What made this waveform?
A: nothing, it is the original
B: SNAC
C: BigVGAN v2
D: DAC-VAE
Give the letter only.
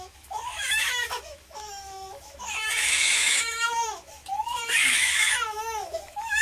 D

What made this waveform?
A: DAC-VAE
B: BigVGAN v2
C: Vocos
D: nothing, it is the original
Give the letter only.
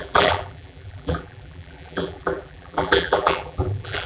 B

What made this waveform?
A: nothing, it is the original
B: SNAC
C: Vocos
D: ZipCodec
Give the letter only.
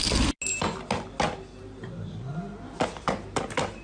A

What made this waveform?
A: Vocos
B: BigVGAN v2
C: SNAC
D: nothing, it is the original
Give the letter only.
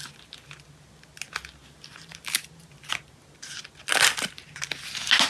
D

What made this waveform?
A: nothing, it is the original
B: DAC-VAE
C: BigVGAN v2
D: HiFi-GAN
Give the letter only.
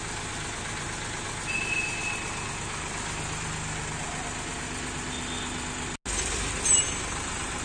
A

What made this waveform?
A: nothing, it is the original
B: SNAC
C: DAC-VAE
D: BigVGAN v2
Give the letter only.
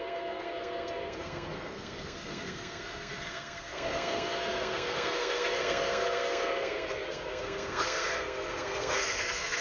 B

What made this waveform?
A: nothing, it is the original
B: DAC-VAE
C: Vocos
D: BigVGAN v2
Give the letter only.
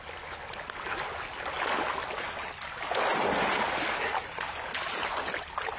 A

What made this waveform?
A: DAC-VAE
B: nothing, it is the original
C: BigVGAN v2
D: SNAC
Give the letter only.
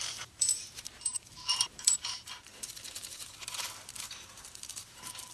C